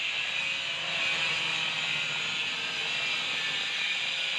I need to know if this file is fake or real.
real